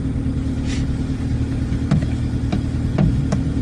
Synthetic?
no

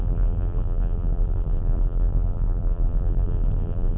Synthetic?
yes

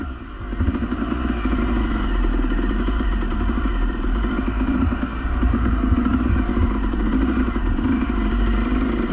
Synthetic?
yes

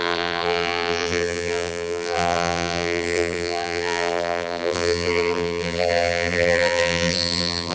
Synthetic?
yes